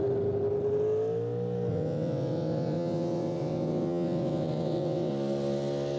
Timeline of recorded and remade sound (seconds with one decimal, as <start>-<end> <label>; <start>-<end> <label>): 0.0-1.7 recorded; 1.7-5.1 remade; 5.1-6.0 recorded